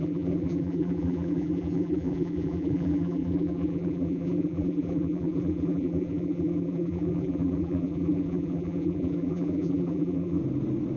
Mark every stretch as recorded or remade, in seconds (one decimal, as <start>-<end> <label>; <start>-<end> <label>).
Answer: 0.0-10.4 remade; 10.4-11.0 recorded